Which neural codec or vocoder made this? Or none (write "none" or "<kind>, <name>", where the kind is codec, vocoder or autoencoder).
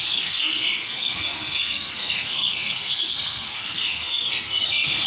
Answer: codec, SNAC